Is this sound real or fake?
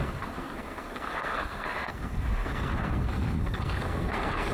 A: fake